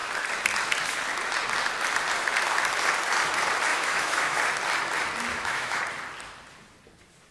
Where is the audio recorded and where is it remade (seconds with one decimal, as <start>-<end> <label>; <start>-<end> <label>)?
0.0-3.7 recorded; 3.7-4.4 remade; 4.4-5.3 recorded; 5.3-5.8 remade; 5.8-7.3 recorded

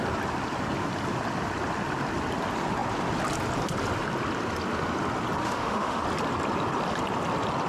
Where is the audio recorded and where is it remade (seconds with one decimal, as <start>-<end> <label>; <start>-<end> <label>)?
0.0-5.4 recorded; 5.4-6.0 remade; 6.0-7.7 recorded

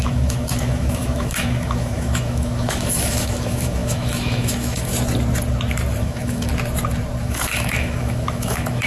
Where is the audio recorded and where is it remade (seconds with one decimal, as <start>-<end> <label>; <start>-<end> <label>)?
0.0-4.9 remade; 4.9-6.0 recorded; 6.0-6.5 remade; 6.5-7.2 recorded; 7.2-8.9 remade

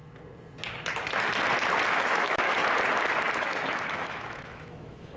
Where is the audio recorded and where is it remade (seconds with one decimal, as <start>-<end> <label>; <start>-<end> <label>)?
0.0-1.9 recorded; 1.9-2.6 remade; 2.6-3.4 recorded; 3.4-5.2 remade

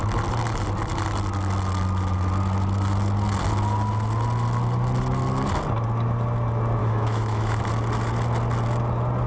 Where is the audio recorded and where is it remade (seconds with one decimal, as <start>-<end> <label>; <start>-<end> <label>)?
0.0-6.8 recorded; 6.8-7.6 remade; 7.6-9.3 recorded

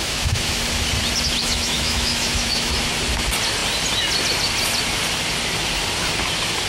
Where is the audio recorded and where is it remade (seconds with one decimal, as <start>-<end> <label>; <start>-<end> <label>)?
0.0-0.6 remade; 0.6-1.4 recorded; 1.4-2.8 remade; 2.8-6.7 recorded

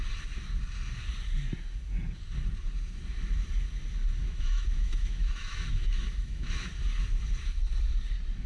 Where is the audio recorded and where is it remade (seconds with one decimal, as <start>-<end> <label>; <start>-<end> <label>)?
0.0-4.2 recorded; 4.2-6.7 remade; 6.7-8.5 recorded

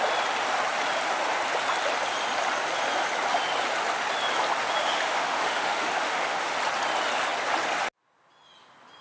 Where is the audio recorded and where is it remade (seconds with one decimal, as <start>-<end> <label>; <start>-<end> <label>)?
0.0-4.8 recorded; 4.8-6.5 remade; 6.5-9.0 recorded